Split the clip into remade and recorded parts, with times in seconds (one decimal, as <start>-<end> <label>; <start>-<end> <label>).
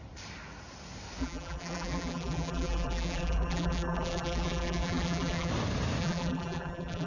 0.0-1.2 recorded; 1.2-5.5 remade; 5.5-6.0 recorded; 6.0-7.1 remade